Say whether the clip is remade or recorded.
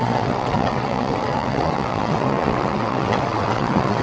remade